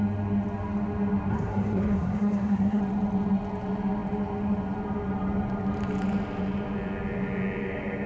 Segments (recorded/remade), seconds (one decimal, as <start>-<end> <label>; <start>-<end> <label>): 0.0-1.3 recorded; 1.3-2.8 remade; 2.8-8.1 recorded